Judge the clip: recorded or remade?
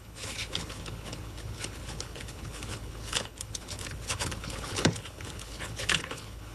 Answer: remade